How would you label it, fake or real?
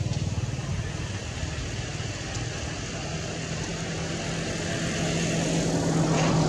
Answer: real